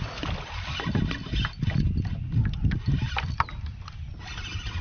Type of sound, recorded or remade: recorded